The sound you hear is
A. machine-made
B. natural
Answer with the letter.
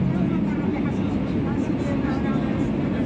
B